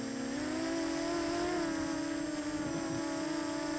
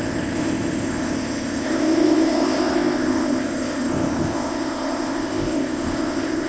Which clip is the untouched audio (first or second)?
first